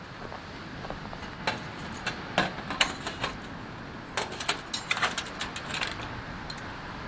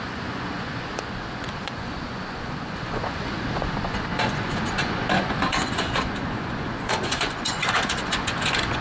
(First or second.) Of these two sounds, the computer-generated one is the second